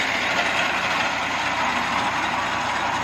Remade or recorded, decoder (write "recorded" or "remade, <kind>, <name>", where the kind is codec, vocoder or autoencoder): recorded